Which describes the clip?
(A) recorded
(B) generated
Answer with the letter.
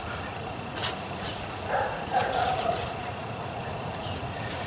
B